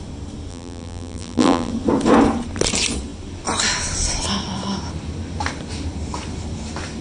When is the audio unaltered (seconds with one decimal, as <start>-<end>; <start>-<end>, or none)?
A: 0.0-0.5; 1.7-7.0